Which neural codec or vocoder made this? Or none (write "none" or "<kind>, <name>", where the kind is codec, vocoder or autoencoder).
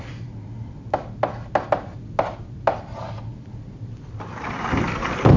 none